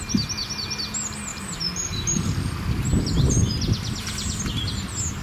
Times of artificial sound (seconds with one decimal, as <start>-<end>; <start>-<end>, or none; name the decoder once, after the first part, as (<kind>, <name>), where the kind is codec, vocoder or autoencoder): 1.3-4.4 (vocoder, BigVGAN v2)